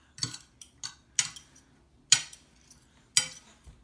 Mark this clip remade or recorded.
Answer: recorded